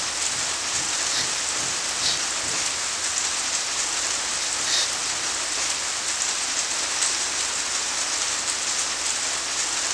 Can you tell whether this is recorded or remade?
recorded